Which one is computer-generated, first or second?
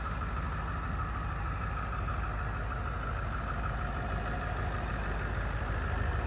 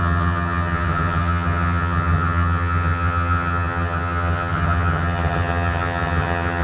second